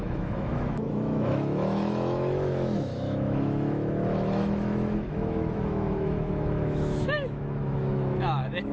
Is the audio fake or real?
fake